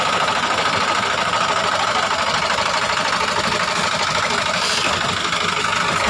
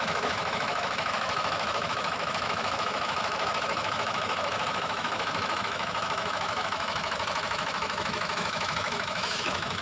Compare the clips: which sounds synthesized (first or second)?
second